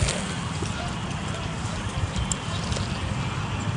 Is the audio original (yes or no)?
yes